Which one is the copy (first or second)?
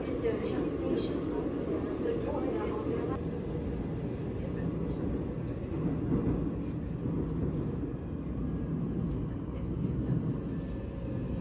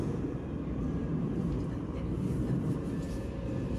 second